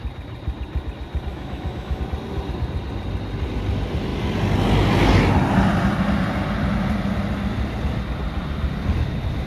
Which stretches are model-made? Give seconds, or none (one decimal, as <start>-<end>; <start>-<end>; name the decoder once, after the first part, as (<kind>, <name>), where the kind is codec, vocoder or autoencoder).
1.3-2.0 (autoencoder, DAC-VAE)